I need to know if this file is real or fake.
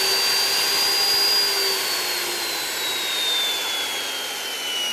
real